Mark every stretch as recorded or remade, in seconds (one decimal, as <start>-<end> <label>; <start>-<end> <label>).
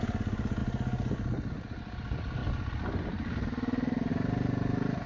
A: 0.0-5.1 recorded